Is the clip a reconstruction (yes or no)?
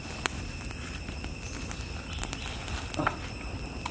no